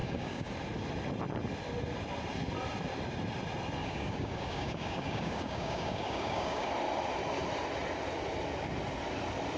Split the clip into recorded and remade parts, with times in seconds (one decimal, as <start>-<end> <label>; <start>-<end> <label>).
0.0-0.5 remade; 0.5-3.8 recorded; 3.8-6.7 remade; 6.7-9.6 recorded